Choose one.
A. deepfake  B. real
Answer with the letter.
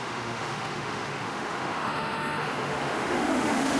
A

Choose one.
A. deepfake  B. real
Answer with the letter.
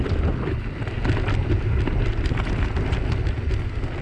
B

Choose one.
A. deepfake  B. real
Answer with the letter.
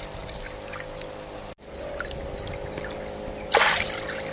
B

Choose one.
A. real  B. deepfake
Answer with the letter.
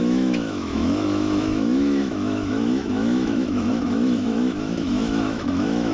B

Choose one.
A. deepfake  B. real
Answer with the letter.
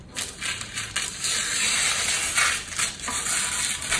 B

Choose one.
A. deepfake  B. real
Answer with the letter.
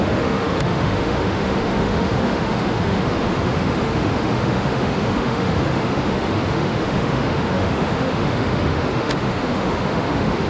A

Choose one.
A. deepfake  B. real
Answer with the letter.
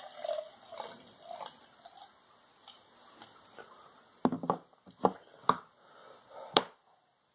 B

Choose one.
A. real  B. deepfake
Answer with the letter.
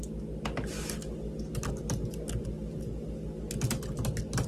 A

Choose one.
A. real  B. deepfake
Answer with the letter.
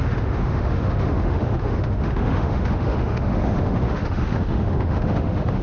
B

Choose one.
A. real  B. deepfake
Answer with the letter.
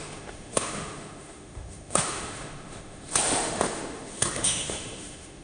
B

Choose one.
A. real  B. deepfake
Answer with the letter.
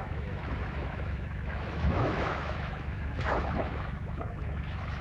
B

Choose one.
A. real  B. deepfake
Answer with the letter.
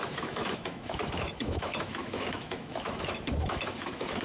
B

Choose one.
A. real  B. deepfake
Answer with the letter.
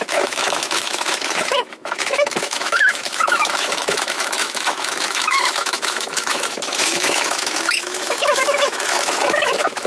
B